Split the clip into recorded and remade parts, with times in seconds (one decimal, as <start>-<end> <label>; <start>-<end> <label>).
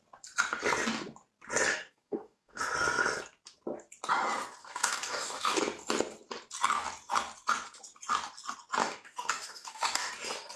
0.0-1.7 recorded; 1.7-2.6 remade; 2.6-4.6 recorded; 4.6-5.6 remade; 5.6-8.8 recorded; 8.8-10.1 remade; 10.1-10.6 recorded